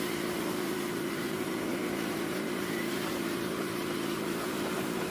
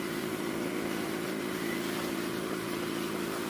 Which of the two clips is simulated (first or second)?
first